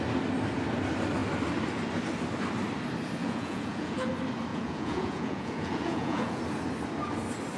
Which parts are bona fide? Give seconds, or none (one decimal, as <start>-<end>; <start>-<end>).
0.0-3.2; 4.1-4.5; 6.4-7.6